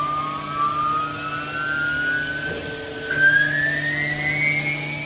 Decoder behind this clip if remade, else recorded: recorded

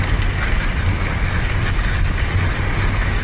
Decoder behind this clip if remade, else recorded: recorded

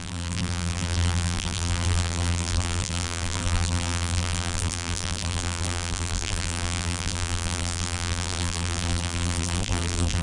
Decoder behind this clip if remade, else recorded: remade, vocoder, BigVGAN v2